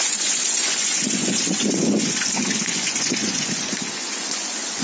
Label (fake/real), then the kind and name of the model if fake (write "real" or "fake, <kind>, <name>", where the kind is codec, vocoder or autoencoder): fake, vocoder, Vocos